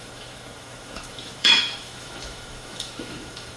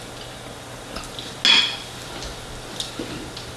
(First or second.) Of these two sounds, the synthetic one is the first